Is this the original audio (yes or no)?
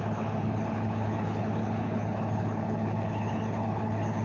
no